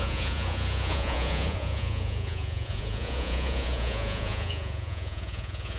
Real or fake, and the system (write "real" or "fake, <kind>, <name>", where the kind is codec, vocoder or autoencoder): fake, vocoder, Vocos